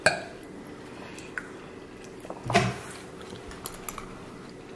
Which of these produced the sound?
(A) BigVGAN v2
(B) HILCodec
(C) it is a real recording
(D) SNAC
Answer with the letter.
C